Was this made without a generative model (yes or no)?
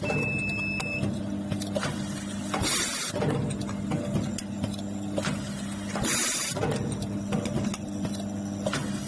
yes